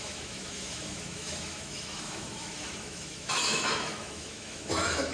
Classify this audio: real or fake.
fake